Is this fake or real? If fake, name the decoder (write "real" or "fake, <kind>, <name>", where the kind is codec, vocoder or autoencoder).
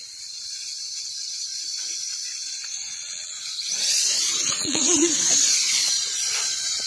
fake, vocoder, Vocos